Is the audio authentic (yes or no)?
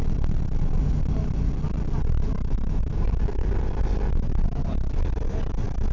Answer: yes